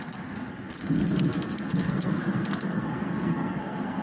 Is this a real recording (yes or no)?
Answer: no